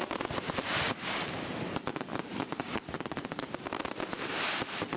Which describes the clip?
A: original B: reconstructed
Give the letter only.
B